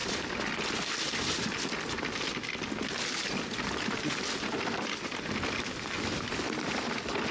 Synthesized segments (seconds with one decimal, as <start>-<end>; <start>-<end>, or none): none